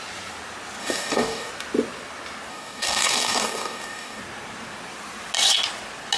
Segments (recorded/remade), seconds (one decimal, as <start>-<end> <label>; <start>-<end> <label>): 0.0-0.8 recorded; 0.8-1.5 remade; 1.5-2.5 recorded; 2.5-4.2 remade; 4.2-6.2 recorded